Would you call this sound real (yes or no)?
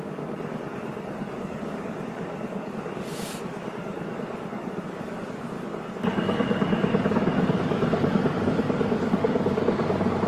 no